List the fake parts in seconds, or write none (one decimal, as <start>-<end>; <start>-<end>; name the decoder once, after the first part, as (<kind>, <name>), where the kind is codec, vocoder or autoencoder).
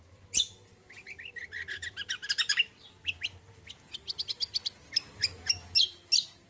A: none